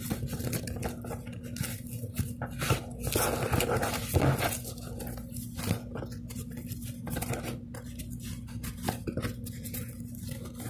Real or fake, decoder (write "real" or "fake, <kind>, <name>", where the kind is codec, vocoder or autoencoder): real